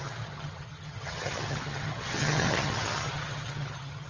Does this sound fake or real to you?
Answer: fake